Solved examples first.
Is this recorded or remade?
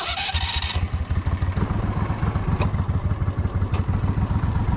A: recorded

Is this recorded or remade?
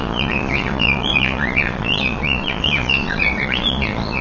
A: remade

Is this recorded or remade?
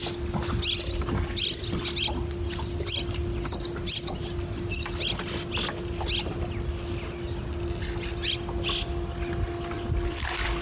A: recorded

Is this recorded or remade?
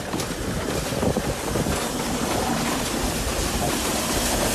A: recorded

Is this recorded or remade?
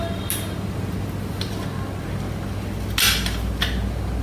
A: recorded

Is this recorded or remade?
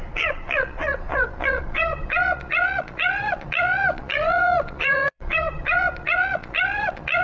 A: remade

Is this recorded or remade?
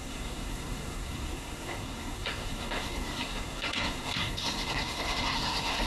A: remade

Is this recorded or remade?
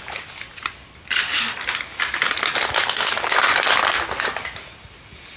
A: recorded